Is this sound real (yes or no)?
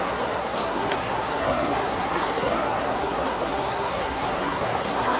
no